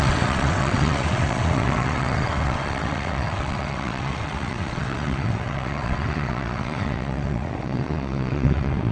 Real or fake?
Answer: fake